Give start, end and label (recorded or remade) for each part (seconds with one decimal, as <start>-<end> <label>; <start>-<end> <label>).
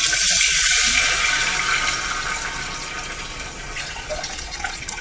0.0-3.7 recorded; 3.7-5.0 remade